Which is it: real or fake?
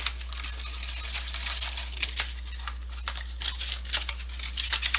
real